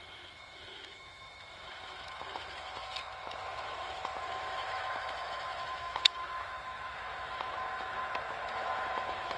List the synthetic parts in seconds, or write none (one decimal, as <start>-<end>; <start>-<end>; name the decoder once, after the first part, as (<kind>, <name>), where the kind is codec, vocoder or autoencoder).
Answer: 0.0-9.4 (autoencoder, DAC-VAE)